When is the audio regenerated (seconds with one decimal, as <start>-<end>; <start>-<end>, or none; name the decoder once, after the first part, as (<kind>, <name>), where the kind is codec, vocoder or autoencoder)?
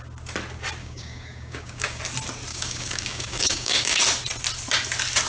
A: 0.8-2.0 (codec, DAC); 2.5-4.0